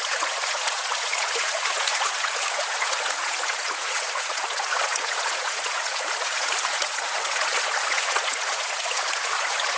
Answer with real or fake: fake